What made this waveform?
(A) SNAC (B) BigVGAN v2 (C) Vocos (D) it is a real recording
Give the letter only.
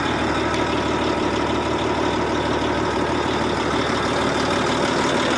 B